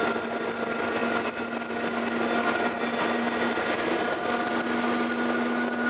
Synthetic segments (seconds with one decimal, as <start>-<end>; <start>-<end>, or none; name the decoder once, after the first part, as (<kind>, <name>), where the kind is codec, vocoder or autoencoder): none